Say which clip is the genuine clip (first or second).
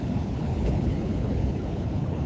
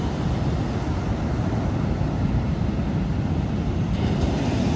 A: second